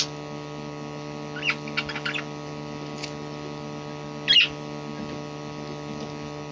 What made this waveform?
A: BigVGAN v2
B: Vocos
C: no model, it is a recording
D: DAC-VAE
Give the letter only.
C